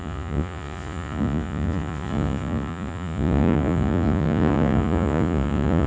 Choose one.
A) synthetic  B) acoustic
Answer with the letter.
A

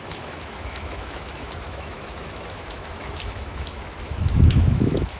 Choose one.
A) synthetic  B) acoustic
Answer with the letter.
A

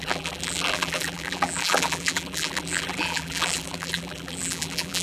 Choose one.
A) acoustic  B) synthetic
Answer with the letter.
B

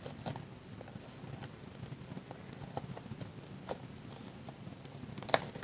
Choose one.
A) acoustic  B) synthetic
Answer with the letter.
A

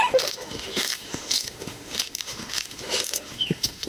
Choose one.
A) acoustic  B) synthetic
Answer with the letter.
B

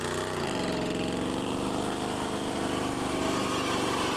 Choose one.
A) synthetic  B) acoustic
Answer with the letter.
B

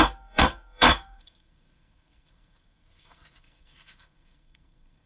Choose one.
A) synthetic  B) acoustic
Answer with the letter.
A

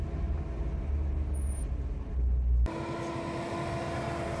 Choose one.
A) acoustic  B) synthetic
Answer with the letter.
A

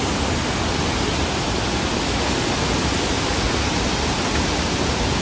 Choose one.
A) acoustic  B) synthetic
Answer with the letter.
A